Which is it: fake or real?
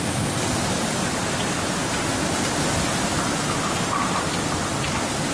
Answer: real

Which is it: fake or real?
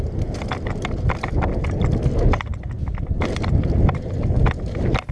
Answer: real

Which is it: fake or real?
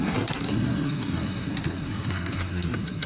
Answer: fake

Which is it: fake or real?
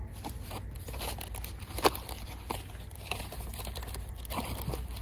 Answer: real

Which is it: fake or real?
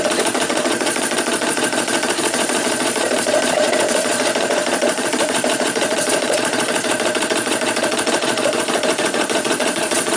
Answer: fake